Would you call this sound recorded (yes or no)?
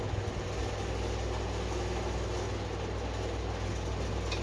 yes